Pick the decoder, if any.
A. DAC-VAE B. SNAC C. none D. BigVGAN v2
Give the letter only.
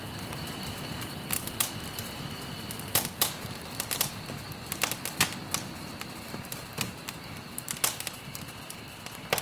C